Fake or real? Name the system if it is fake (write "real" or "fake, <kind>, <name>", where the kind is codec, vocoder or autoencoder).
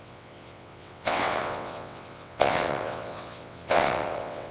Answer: fake, vocoder, WaveNeXt